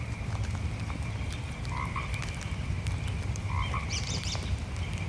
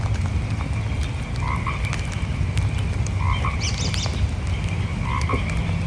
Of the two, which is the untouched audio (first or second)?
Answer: second